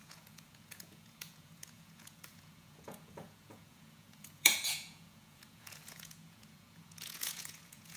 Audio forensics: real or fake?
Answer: fake